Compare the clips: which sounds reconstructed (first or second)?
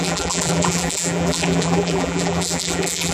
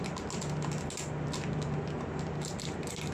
first